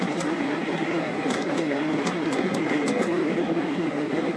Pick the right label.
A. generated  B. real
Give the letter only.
A